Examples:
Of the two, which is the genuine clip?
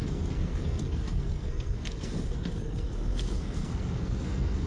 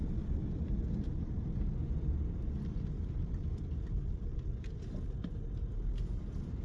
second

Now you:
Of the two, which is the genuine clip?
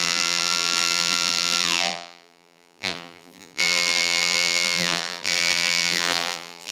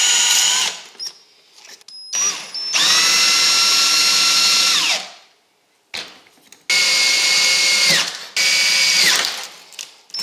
second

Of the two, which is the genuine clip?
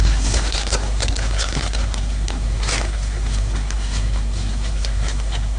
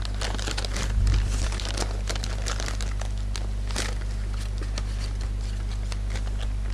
second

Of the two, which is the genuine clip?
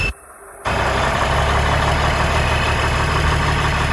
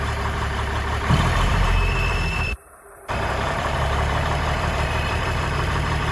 first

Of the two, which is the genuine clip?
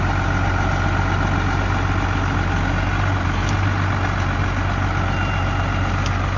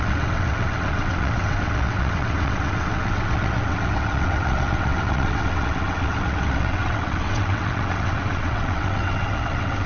first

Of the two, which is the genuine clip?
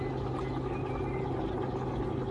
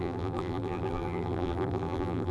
first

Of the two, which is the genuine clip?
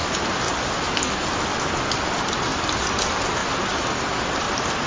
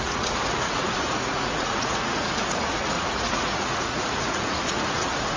first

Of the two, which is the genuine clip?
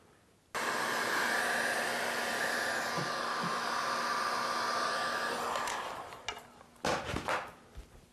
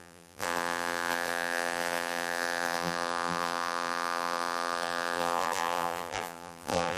first